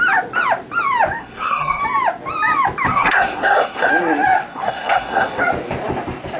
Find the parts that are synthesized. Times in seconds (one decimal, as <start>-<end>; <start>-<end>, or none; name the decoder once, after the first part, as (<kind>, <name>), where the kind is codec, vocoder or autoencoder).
1.2-1.8 (codec, SNAC); 2.9-3.9; 4.5-5.4